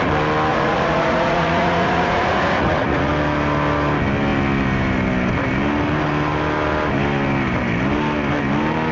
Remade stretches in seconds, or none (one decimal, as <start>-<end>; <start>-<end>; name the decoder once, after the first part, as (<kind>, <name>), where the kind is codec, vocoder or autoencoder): 0.5-3.1 (vocoder, Vocos)